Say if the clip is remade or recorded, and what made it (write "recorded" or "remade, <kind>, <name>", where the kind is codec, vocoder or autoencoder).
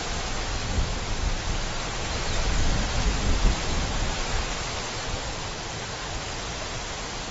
recorded